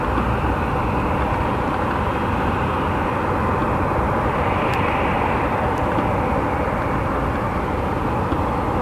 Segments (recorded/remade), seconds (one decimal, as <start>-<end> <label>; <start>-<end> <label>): 0.0-8.8 recorded